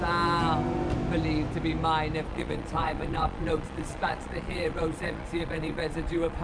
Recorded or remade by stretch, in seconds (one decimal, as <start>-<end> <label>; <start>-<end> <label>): 0.0-2.3 recorded; 2.3-6.4 remade